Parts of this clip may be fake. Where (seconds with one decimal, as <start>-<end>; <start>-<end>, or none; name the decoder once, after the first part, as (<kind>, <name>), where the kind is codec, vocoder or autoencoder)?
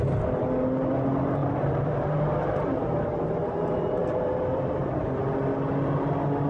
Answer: 1.4-5.2 (vocoder, BigVGAN v2)